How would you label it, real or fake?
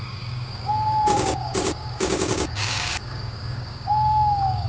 fake